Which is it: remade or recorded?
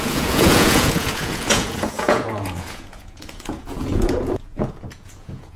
remade